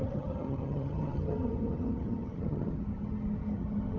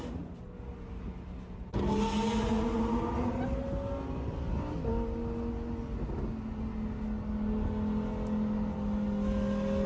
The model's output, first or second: first